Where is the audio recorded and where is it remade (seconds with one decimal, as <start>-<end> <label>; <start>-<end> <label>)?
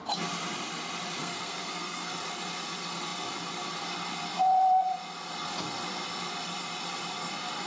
0.0-1.2 recorded; 1.2-2.1 remade; 2.1-7.7 recorded